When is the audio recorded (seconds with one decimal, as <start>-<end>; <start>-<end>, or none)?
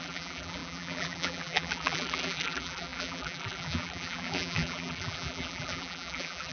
none